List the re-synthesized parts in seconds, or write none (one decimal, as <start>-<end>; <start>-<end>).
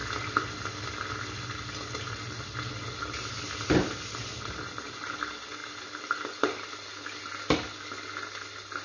none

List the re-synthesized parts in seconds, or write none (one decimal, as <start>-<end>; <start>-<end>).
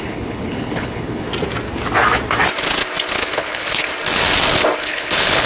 0.0-1.3; 3.1-3.8; 4.8-5.5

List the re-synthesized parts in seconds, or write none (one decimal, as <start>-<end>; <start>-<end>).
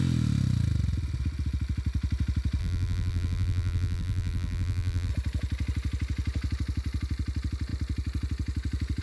2.6-5.1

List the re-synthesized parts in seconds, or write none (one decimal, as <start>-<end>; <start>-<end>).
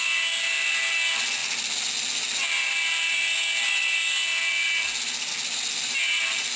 none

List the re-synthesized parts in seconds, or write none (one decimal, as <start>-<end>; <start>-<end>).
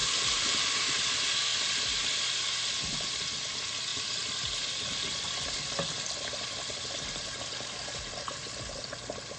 1.5-3.2; 3.9-7.4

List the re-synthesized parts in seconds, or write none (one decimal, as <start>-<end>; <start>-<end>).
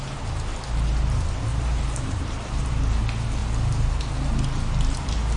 1.5-2.7; 3.4-4.0